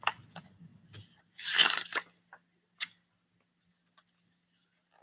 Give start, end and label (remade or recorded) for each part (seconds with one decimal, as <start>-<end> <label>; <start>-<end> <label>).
0.0-5.0 recorded